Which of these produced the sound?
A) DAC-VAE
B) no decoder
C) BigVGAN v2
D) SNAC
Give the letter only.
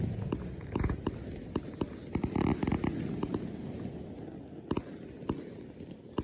B